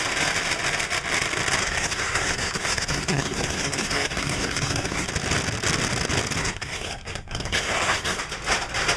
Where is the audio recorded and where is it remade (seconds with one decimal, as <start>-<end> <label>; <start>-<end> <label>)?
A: 0.0-1.6 recorded; 1.6-5.1 remade; 5.1-6.4 recorded; 6.4-8.2 remade; 8.2-9.0 recorded